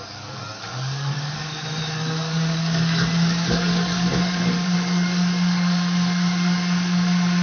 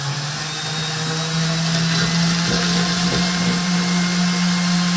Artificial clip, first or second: first